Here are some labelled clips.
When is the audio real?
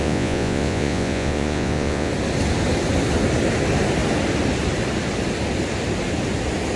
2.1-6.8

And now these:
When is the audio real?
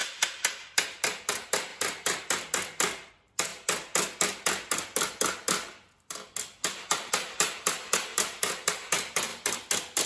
0.0-0.6; 1.7-3.1; 3.5-7.1; 9.3-10.1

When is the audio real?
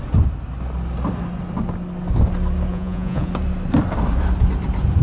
0.0-2.7; 3.3-5.0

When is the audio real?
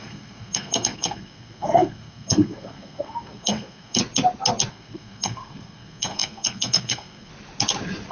4.0-4.7; 7.3-8.1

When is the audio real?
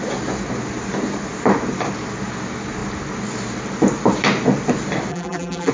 0.0-5.1